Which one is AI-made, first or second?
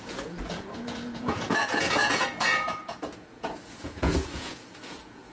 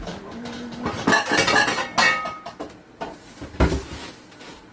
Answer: first